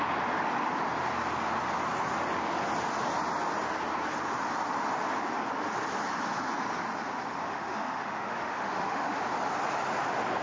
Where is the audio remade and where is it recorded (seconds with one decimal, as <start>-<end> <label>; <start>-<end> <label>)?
0.0-7.4 recorded; 7.4-9.2 remade; 9.2-10.4 recorded

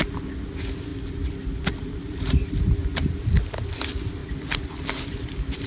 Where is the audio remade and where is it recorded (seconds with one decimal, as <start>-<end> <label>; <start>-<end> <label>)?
0.0-5.7 recorded